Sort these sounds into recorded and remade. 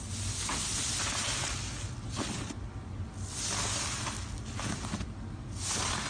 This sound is recorded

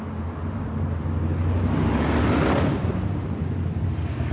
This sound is recorded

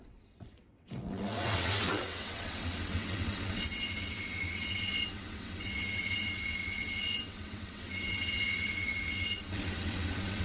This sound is remade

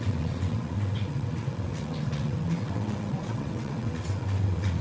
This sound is remade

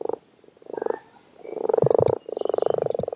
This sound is recorded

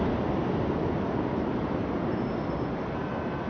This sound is recorded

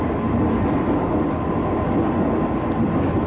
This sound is recorded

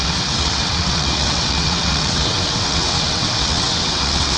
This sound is remade